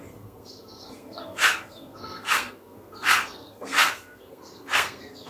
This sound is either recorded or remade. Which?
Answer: remade